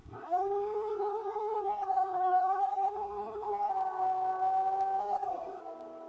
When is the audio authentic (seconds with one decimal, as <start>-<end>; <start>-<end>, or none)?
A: 3.7-5.0; 5.6-6.1